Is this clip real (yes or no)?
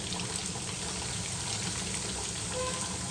yes